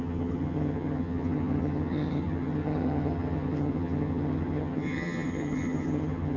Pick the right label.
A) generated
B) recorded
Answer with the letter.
A